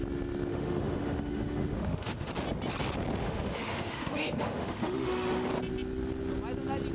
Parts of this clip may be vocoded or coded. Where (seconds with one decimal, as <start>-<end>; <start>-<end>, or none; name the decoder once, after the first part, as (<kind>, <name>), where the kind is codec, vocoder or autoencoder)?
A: 0.5-2.3 (autoencoder, DAC-VAE); 3.2-5.5